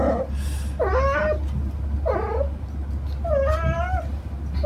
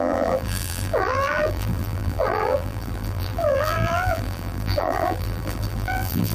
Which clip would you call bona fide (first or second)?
first